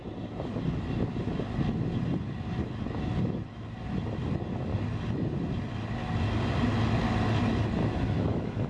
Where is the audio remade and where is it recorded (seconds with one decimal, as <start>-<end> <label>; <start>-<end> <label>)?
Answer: 0.0-7.8 recorded; 7.8-8.7 remade

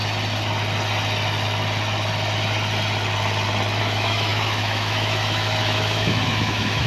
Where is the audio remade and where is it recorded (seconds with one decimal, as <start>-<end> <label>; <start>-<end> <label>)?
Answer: 0.0-3.8 recorded; 3.8-6.9 remade

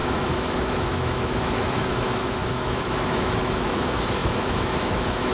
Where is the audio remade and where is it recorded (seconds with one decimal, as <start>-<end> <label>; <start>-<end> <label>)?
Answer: 0.0-5.3 remade